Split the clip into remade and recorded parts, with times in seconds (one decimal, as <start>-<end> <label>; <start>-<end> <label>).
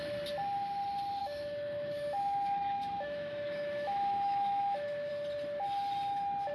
0.0-1.2 recorded; 1.2-5.1 remade; 5.1-6.5 recorded